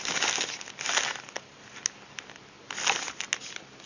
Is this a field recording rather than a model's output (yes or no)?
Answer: yes